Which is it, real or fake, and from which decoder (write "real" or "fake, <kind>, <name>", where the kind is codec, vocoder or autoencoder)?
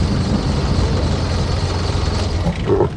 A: real